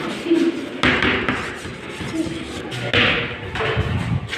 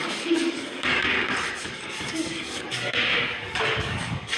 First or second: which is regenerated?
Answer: second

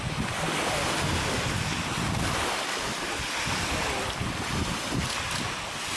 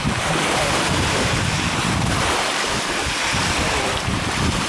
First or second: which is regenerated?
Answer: second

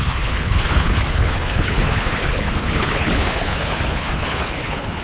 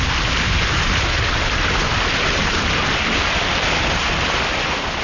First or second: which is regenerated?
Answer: first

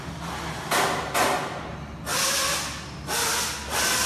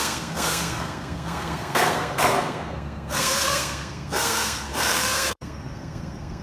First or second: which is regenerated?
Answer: second